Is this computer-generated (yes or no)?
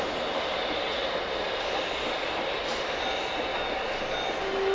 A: no